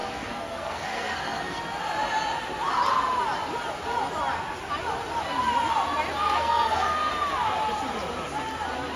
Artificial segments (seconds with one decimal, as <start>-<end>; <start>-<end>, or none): 0.0-1.6; 6.2-7.1